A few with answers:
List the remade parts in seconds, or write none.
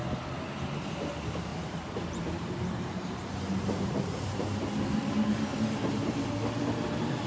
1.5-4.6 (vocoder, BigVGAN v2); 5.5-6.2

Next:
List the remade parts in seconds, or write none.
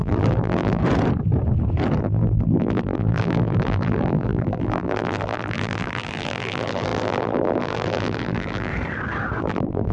0.0-0.8 (vocoder, BigVGAN v2); 2.0-8.7; 9.4-9.9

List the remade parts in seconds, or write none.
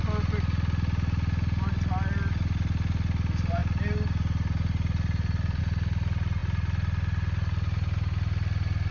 3.6-5.6 (vocoder, BigVGAN v2)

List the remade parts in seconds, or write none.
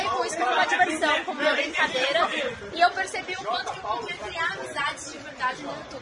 none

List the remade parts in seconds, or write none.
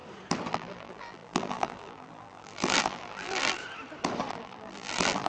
0.5-3.6 (vocoder, BigVGAN v2); 4.3-5.3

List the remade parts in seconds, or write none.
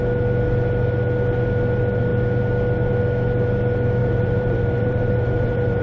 4.0-5.8 (vocoder, BigVGAN v2)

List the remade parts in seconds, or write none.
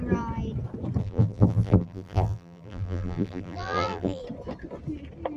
1.0-4.2 (vocoder, BigVGAN v2)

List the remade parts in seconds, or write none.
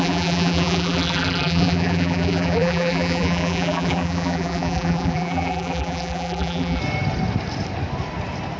0.0-6.8 (vocoder, BigVGAN v2)